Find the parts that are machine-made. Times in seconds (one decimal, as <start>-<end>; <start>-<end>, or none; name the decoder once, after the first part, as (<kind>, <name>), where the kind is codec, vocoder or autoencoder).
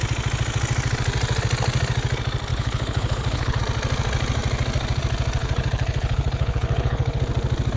2.5-3.6 (codec, HILCodec); 5.4-7.2